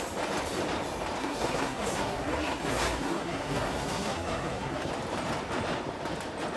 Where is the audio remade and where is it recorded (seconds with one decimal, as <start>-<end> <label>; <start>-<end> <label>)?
0.0-1.2 recorded; 1.2-4.9 remade; 4.9-6.6 recorded